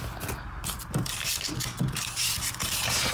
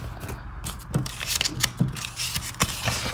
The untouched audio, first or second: second